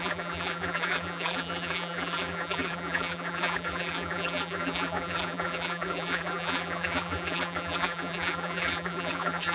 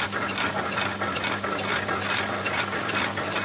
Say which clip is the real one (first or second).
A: second